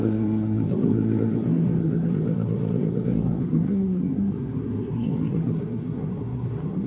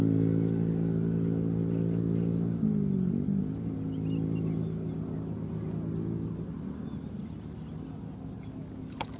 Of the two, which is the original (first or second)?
second